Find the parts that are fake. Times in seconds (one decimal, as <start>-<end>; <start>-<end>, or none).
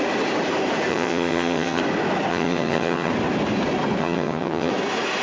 0.9-1.8; 2.3-3.1; 4.0-4.7